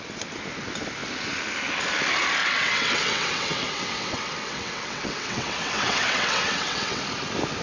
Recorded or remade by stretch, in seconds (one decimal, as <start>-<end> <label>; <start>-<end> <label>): 0.0-2.4 recorded; 2.4-7.0 remade; 7.0-7.6 recorded